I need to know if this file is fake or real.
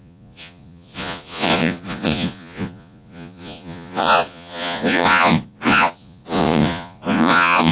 fake